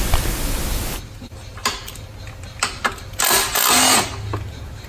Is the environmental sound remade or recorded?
recorded